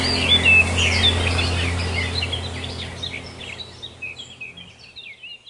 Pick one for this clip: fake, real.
real